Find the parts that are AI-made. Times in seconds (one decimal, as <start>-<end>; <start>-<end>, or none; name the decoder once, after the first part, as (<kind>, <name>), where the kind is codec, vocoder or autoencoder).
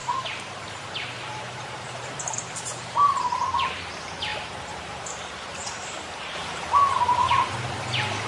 0.0-3.8 (vocoder, BigVGAN v2); 4.3-6.7